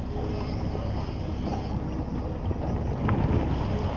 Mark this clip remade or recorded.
recorded